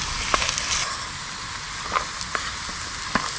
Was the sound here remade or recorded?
recorded